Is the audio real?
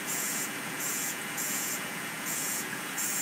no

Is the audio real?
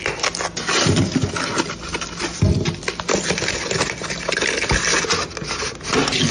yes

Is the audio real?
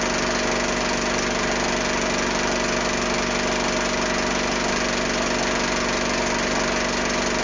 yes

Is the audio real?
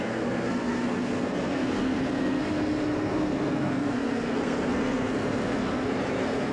no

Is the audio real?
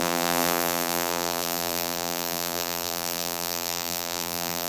no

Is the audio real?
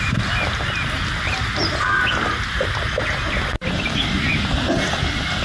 yes